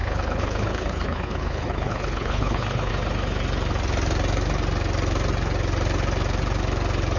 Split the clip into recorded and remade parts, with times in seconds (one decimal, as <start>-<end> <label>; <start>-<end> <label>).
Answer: 0.0-2.9 remade; 2.9-7.2 recorded